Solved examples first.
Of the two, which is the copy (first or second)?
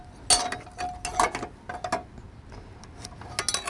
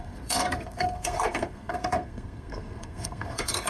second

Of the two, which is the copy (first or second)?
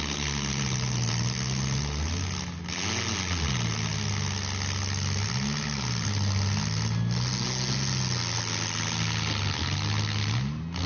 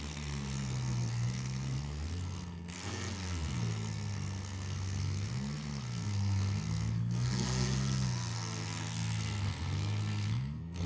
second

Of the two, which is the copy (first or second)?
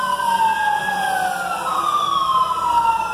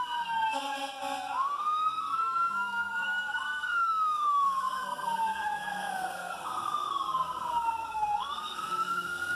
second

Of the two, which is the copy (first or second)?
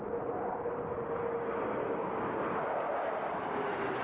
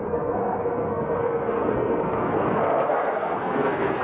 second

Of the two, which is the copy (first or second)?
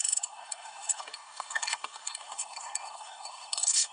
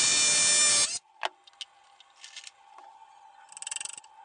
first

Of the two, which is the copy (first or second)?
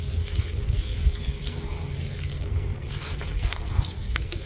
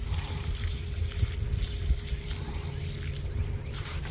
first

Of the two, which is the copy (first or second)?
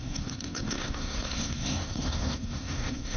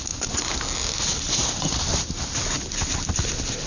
first